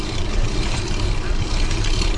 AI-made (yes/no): yes